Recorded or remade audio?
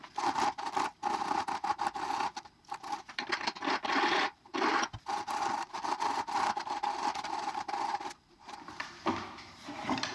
remade